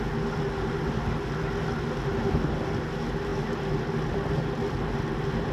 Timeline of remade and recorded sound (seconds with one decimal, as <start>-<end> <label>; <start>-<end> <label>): 0.0-5.5 recorded